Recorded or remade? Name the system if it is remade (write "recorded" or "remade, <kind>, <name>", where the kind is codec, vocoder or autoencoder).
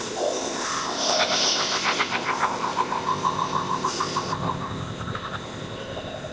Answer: remade, codec, ZipCodec